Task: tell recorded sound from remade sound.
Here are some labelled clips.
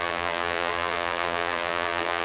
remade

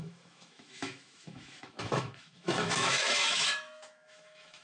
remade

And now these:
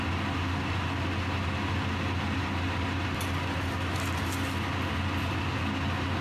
recorded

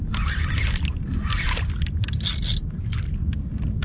recorded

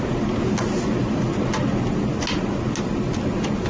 recorded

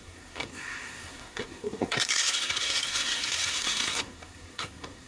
remade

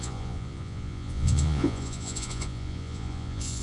remade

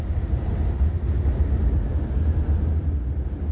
recorded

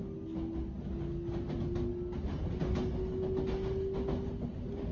recorded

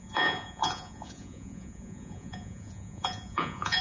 remade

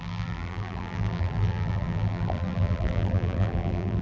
remade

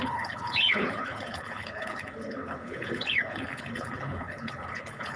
remade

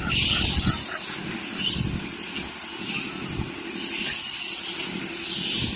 recorded